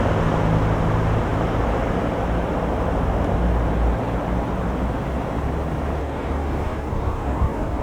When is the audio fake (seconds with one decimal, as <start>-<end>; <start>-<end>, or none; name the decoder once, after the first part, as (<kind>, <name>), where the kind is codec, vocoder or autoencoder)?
6.0-7.8 (codec, DAC)